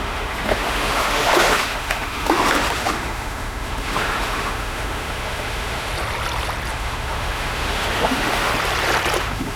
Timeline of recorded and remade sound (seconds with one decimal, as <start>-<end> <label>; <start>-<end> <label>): 0.0-5.9 remade; 5.9-6.7 recorded; 6.7-8.5 remade; 8.5-9.2 recorded; 9.2-9.6 remade